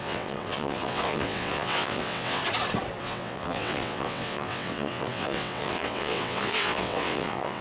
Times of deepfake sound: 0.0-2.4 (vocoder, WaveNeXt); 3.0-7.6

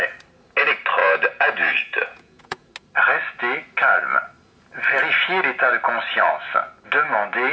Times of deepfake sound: 1.0-2.7 (vocoder, Vocos)

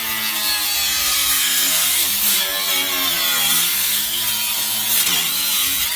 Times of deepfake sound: 1.0-2.4 (codec, SNAC); 3.6-4.2

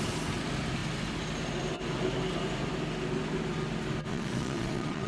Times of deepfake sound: 4.1-5.1 (vocoder, Vocos)

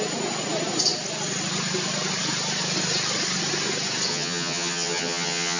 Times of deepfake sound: 4.1-5.6 (vocoder, HiFi-GAN)

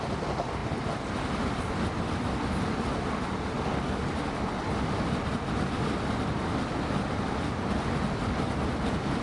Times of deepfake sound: none

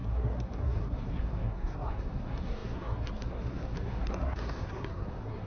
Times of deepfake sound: 0.0-5.5 (codec, SNAC)